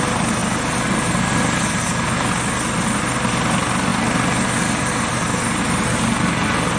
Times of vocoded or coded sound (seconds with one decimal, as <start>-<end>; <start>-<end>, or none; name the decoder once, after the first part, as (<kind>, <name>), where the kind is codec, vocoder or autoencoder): none